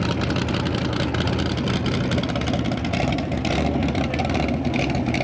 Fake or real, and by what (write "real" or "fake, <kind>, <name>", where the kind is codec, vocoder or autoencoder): real